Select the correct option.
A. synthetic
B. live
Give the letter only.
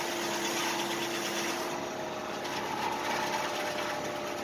B